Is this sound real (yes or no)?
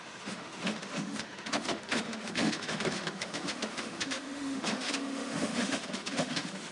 no